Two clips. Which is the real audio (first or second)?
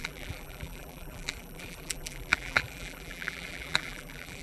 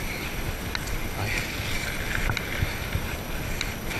second